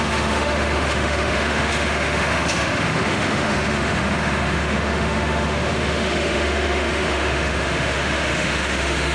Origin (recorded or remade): remade